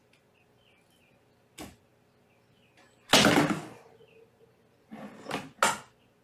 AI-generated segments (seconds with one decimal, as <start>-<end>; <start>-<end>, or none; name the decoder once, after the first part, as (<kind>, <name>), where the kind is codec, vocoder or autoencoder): none